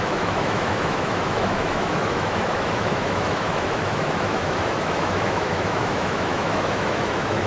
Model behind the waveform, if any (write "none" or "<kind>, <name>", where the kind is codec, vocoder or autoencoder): autoencoder, DAC-VAE